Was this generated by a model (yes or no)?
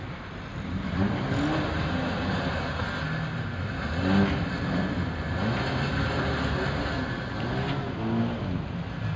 no